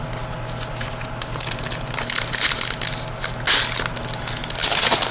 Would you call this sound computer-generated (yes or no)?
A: no